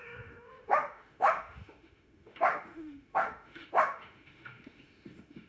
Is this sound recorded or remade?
remade